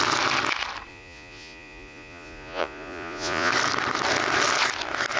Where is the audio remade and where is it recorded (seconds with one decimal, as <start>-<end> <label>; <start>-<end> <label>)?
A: 0.0-0.9 recorded; 0.9-3.5 remade; 3.5-5.2 recorded